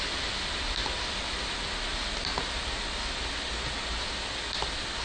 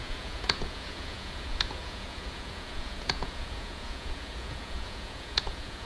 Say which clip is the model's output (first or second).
second